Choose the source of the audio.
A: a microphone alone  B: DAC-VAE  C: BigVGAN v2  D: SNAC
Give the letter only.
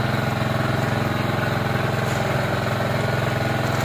A